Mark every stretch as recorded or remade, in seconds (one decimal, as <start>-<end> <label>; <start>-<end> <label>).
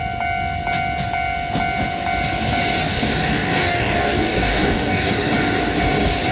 0.0-2.8 recorded; 2.8-5.1 remade; 5.1-6.3 recorded